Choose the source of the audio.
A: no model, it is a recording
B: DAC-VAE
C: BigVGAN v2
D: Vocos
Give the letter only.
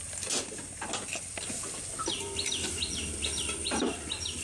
C